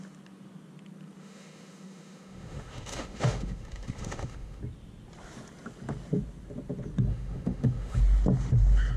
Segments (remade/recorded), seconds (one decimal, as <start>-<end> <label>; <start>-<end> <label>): 0.0-1.2 recorded; 1.2-4.6 remade; 4.6-7.1 recorded; 7.1-8.0 remade; 8.0-9.0 recorded